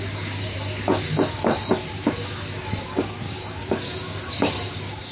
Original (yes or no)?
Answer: no